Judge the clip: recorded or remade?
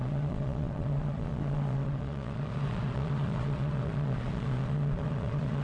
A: remade